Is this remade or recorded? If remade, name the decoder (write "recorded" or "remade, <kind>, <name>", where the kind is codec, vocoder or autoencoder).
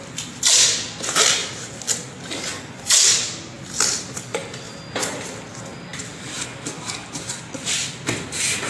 recorded